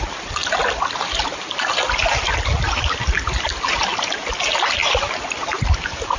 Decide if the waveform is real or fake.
real